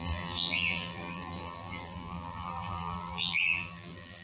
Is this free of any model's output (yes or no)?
no